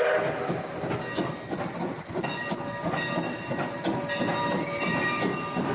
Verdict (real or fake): real